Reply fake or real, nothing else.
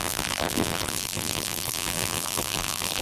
fake